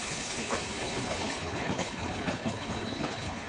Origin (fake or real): fake